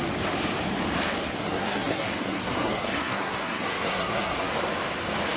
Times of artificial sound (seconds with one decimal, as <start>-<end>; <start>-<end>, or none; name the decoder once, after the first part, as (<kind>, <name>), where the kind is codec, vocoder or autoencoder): 1.3-4.5 (codec, SNAC)